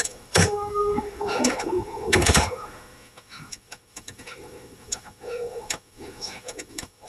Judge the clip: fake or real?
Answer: fake